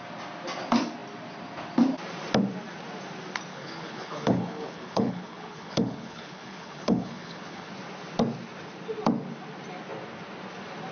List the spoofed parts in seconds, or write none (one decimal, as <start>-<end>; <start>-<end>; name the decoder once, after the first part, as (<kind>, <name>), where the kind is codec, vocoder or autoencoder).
3.5-7.7 (codec, HILCodec)